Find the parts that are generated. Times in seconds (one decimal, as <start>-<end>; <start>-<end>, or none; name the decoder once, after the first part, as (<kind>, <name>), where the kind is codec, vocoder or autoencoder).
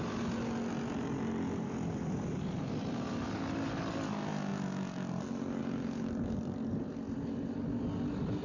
none